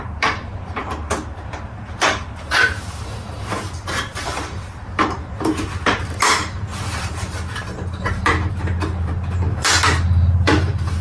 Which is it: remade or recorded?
remade